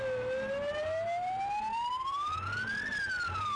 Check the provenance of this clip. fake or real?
real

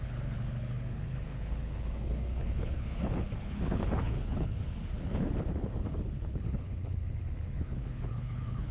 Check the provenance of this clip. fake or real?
fake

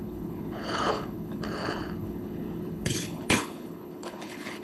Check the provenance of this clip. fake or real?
fake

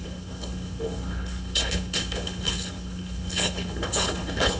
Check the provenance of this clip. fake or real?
fake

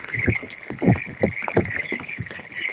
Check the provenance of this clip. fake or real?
fake